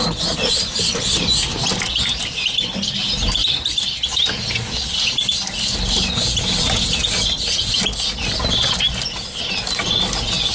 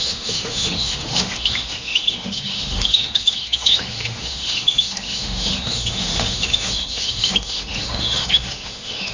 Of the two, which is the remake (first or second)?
second